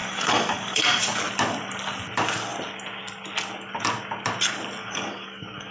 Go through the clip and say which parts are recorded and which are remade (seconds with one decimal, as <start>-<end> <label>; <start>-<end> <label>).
0.0-1.0 remade; 1.0-4.8 recorded; 4.8-5.7 remade